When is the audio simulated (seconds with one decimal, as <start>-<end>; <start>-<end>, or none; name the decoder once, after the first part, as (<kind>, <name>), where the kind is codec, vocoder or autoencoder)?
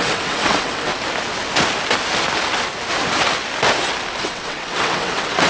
0.0-0.9 (vocoder, WaveNeXt); 4.2-5.5